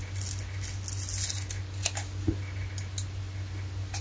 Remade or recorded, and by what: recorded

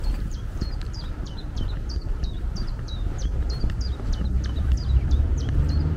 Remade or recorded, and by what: remade, vocoder, BigVGAN v2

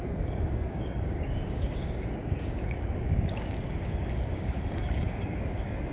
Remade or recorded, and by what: remade, codec, DAC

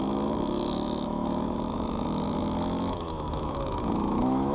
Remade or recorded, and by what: remade, autoencoder, DAC-VAE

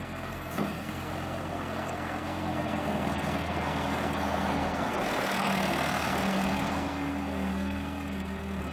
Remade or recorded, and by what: remade, codec, SNAC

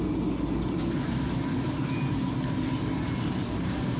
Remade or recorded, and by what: recorded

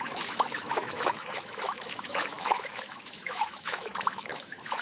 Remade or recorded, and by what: remade, autoencoder, DAC-VAE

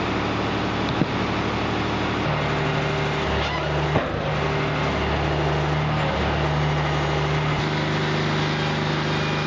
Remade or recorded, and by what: recorded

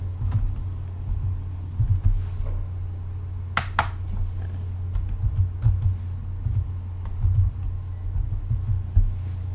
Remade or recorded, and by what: recorded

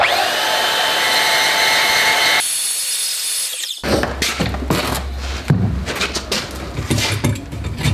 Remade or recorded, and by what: recorded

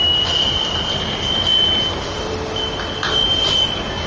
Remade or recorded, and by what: recorded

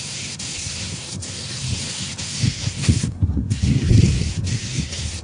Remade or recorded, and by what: remade, codec, SNAC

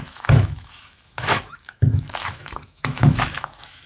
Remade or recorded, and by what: remade, autoencoder, DAC-VAE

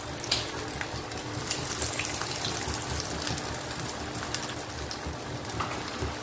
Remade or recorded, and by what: recorded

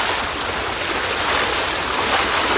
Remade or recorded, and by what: recorded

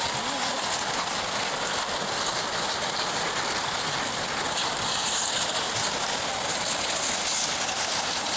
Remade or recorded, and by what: recorded